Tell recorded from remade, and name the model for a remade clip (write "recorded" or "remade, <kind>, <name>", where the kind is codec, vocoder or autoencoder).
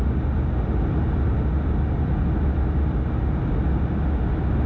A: recorded